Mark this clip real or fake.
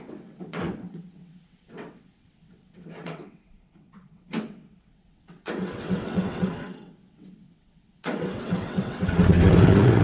fake